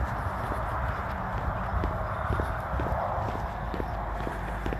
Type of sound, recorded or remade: recorded